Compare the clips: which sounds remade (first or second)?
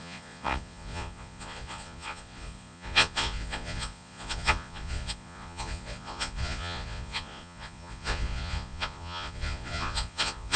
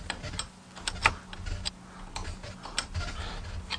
first